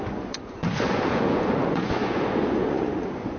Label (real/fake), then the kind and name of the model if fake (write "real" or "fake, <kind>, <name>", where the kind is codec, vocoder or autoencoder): fake, vocoder, Vocos